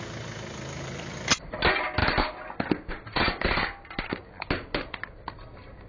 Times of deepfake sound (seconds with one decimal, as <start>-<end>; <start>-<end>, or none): none